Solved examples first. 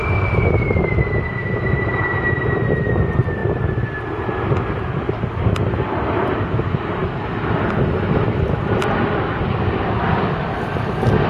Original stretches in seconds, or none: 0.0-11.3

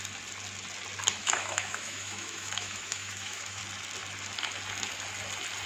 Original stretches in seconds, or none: 0.0-1.2; 3.6-5.7

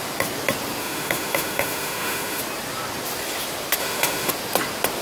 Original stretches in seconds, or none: 0.0-0.8; 2.4-3.8; 4.3-5.0